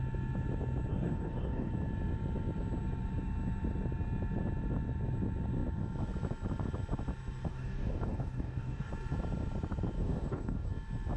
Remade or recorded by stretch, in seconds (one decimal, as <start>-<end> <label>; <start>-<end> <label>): 0.0-0.9 recorded; 0.9-1.7 remade; 1.7-7.5 recorded; 7.5-8.9 remade; 8.9-10.0 recorded; 10.0-10.7 remade; 10.7-11.2 recorded